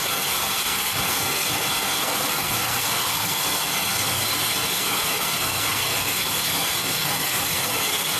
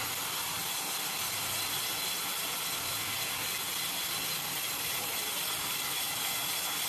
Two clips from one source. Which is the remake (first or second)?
first